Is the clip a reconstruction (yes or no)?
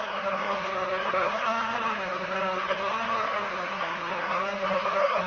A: yes